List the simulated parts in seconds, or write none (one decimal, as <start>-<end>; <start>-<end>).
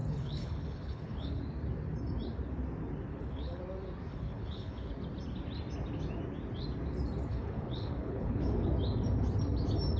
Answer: 0.0-1.4; 3.1-3.6; 4.1-4.9; 7.3-8.7